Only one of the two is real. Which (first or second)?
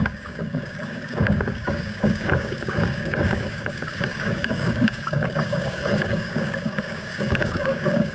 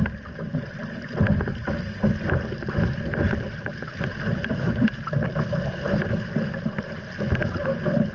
second